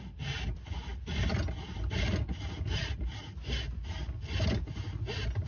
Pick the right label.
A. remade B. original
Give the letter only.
B